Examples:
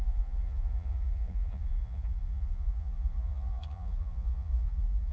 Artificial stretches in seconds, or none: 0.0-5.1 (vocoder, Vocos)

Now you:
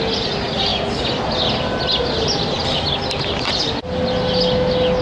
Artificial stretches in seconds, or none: none

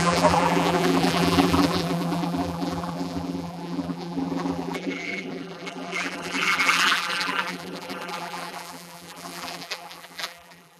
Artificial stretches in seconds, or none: 0.0-10.8 (vocoder, BigVGAN v2)

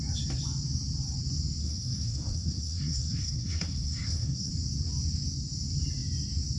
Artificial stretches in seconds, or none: 1.6-4.5 (codec, SNAC)

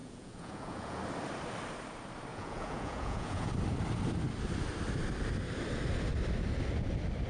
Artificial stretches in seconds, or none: 0.0-1.0 (vocoder, Vocos); 2.3-3.5